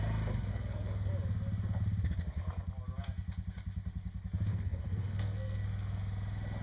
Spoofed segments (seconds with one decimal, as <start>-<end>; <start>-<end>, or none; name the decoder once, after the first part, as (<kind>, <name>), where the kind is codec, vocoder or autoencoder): 0.5-1.1 (codec, SNAC); 4.5-6.0